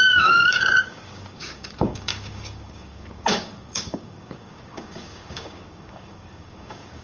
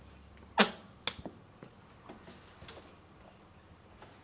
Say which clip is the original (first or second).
second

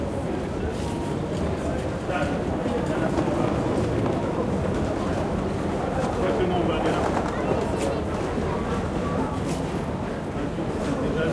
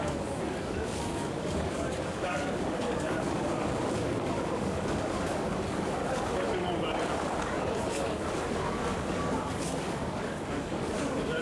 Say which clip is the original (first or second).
first